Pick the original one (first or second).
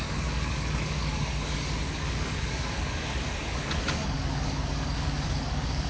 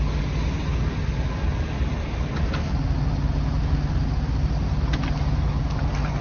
second